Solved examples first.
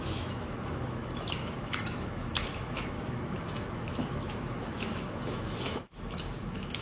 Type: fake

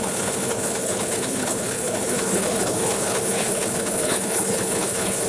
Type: fake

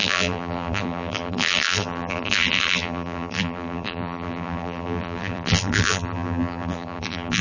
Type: fake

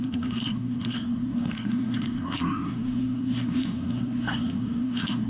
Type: fake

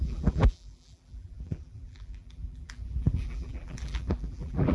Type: fake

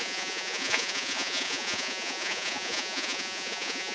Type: fake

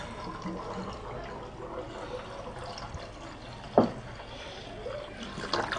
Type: real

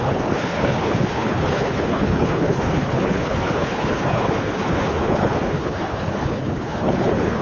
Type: fake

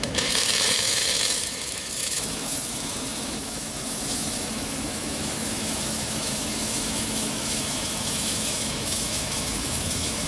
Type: fake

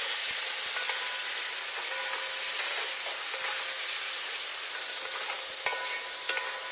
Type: real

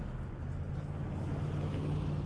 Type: real